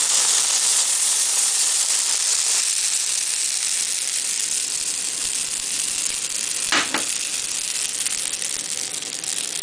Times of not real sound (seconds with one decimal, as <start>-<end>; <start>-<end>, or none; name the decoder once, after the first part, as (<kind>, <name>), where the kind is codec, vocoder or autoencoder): 0.7-1.8 (vocoder, Vocos)